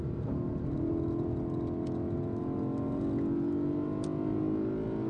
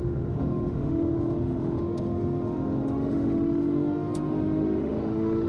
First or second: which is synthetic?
second